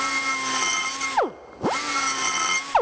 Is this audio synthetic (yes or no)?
no